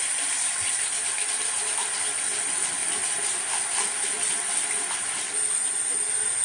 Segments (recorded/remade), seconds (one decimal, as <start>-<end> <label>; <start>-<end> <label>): 0.0-2.1 remade; 2.1-6.4 recorded